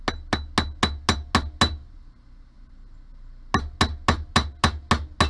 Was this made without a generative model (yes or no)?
yes